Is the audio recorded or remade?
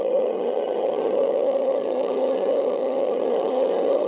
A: remade